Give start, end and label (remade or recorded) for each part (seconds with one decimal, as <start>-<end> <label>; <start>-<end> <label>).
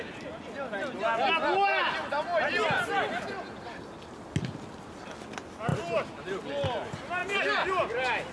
0.0-8.3 recorded